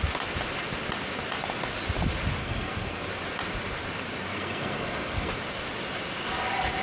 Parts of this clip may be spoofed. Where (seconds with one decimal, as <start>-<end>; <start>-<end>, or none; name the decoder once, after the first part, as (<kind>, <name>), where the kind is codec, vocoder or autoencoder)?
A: 2.4-3.1 (codec, SNAC); 4.3-5.3